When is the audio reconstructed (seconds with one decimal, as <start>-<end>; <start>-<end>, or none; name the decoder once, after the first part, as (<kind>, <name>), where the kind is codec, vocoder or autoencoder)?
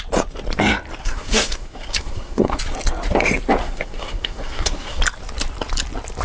1.0-2.6 (codec, SNAC); 3.6-5.0